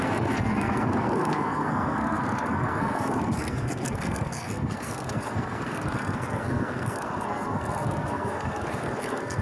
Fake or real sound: fake